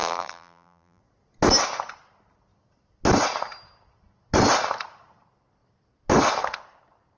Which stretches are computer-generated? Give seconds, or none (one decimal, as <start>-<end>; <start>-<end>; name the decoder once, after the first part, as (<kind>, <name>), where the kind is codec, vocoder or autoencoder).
0.0-1.0 (vocoder, BigVGAN v2)